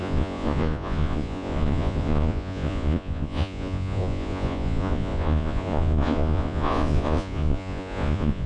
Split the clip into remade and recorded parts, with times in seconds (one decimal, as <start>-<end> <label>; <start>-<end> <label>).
0.0-8.5 remade